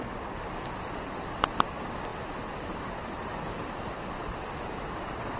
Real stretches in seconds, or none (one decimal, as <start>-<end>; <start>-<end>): 0.0-5.4